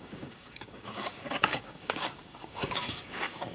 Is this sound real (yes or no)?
no